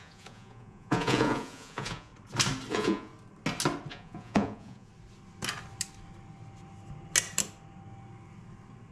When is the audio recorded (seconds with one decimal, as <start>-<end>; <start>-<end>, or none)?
2.1-2.7; 3.1-3.9; 4.9-8.9

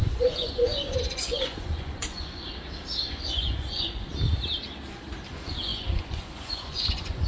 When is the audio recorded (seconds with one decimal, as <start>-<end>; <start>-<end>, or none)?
2.5-3.1; 4.1-5.3

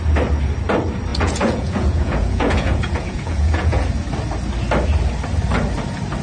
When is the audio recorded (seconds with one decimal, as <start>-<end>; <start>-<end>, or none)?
0.0-1.1; 3.9-6.2

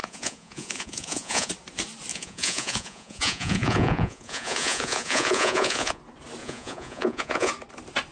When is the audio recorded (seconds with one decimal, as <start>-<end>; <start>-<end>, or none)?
1.5-2.1; 6.0-6.4; 7.5-8.1

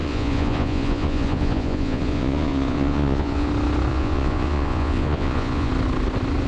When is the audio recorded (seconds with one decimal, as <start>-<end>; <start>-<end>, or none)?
3.5-3.9; 5.7-6.5

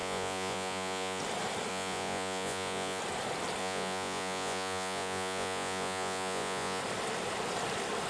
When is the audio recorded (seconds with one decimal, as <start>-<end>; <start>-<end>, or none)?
1.2-1.7; 3.0-3.6; 6.8-8.1